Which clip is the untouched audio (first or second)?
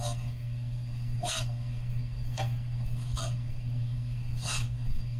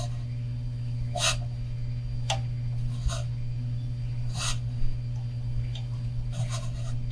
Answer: second